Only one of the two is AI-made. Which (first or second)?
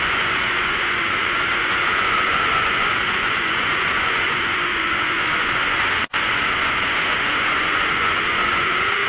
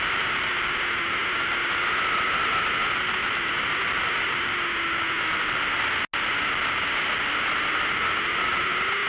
first